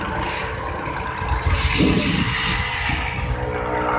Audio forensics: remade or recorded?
recorded